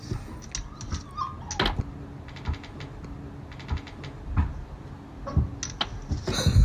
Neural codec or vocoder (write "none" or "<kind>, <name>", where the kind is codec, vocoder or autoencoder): none